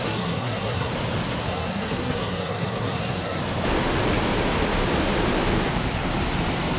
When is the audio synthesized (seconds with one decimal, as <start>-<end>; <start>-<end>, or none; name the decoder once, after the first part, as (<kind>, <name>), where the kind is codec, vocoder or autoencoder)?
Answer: 0.0-0.9 (codec, SNAC); 1.4-3.4